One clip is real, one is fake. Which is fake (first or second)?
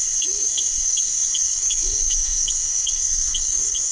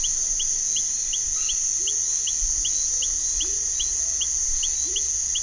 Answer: first